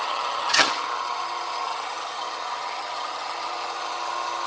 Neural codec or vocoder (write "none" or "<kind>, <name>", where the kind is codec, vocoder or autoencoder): vocoder, HiFi-GAN